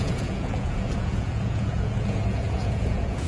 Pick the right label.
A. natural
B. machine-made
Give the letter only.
B